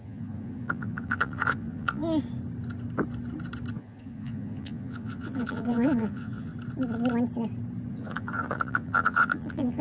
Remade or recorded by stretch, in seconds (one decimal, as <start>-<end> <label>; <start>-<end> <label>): 0.0-2.0 remade; 2.0-3.7 recorded; 3.7-6.5 remade; 6.5-7.9 recorded; 7.9-9.8 remade